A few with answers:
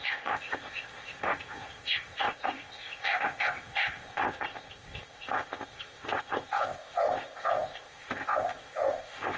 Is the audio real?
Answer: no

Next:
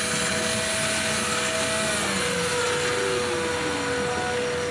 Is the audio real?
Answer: yes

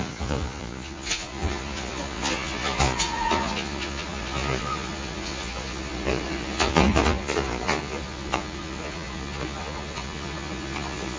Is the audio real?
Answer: no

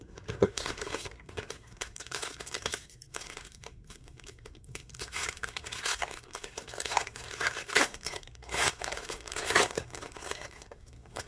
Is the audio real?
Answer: no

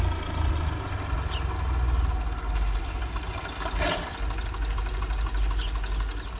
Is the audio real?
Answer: yes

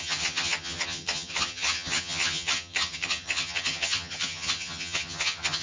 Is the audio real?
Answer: no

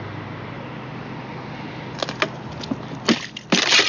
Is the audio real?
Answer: yes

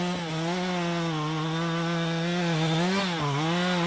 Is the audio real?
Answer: yes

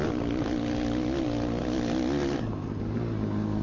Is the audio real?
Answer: yes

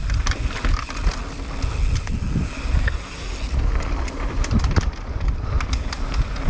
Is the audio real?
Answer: yes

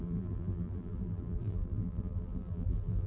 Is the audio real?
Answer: no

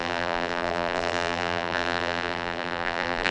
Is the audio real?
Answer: no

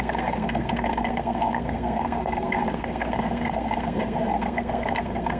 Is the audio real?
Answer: no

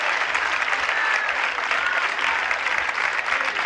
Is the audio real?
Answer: yes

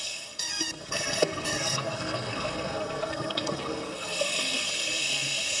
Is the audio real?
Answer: no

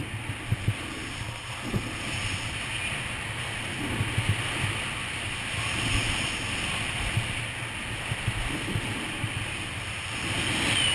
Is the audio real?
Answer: yes